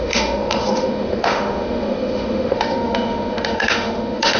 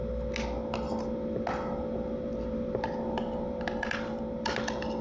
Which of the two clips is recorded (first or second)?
second